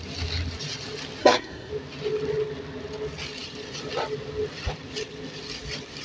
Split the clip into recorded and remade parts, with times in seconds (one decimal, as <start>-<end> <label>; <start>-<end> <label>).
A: 0.0-1.2 recorded; 1.2-1.7 remade; 1.7-6.0 recorded